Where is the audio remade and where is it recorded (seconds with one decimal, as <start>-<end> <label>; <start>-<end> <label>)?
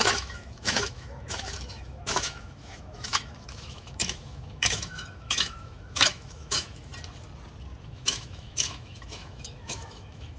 0.0-6.9 remade; 6.9-7.8 recorded; 7.8-10.4 remade